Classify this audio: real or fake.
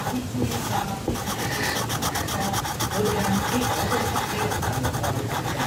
real